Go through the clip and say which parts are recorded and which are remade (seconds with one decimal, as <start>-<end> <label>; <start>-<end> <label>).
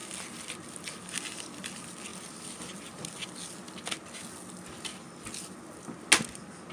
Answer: 0.0-2.1 recorded; 2.1-2.8 remade; 2.8-6.7 recorded